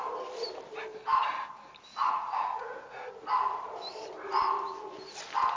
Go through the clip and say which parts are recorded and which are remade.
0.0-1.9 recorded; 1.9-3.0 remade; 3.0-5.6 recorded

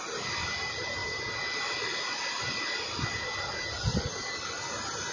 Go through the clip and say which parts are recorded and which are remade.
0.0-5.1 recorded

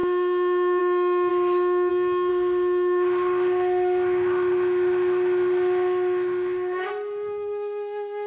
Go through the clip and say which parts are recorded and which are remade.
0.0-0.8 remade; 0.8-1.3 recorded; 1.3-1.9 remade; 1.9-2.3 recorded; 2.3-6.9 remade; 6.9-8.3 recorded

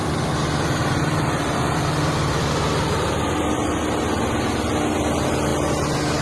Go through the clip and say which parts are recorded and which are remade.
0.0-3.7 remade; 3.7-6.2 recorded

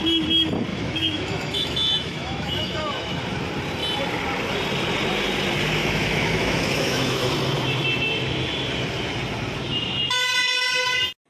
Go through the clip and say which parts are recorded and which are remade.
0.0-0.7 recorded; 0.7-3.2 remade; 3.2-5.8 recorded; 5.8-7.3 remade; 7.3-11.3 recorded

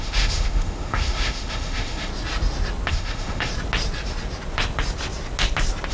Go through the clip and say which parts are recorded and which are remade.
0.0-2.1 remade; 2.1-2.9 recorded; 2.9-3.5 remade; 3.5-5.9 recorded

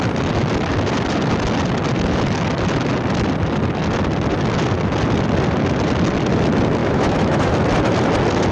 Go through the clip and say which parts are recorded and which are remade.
0.0-6.8 recorded; 6.8-7.5 remade; 7.5-8.5 recorded

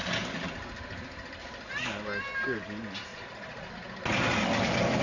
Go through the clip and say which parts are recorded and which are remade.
0.0-3.1 recorded; 3.1-3.7 remade; 3.7-5.0 recorded